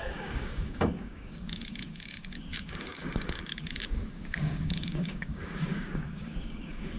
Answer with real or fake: fake